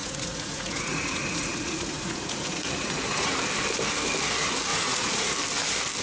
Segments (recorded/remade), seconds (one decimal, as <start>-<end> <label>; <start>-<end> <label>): 0.0-3.4 remade; 3.4-4.7 recorded; 4.7-5.3 remade; 5.3-6.0 recorded